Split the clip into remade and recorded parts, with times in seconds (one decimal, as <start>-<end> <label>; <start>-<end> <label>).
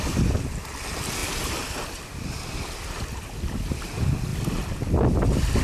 0.0-5.6 recorded